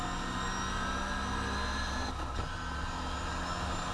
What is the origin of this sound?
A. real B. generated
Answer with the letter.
A